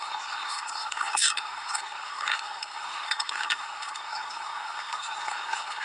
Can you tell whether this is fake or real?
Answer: fake